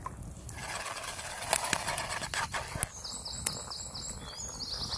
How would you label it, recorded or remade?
recorded